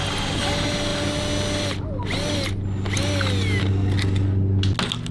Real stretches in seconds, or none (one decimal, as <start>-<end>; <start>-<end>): 0.0-5.1